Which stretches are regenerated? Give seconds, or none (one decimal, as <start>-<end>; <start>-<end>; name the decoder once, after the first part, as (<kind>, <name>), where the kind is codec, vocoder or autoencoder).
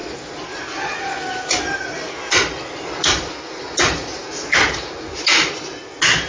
none